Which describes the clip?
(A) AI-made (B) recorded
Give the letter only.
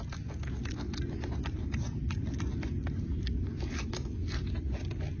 B